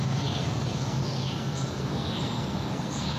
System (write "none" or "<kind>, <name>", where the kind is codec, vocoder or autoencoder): codec, SNAC